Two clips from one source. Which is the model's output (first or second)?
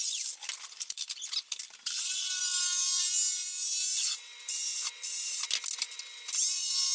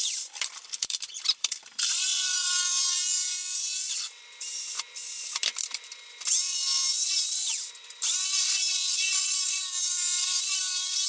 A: second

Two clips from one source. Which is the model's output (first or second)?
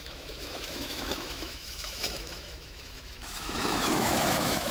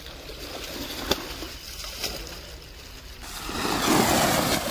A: first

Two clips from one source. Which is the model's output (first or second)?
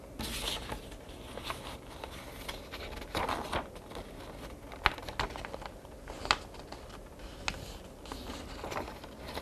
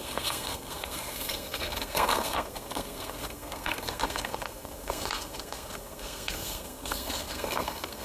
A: second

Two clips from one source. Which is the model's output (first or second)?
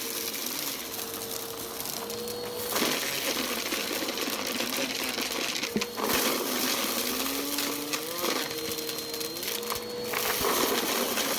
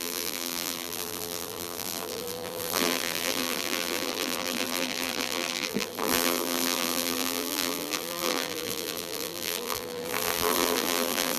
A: second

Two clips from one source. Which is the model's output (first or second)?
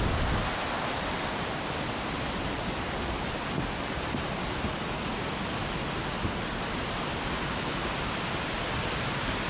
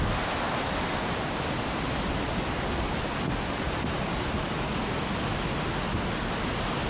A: first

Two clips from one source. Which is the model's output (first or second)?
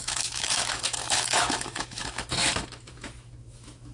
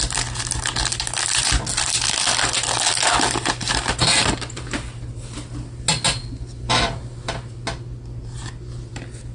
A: first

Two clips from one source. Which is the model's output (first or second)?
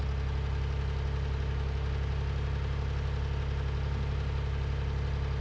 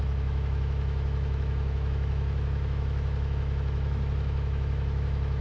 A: second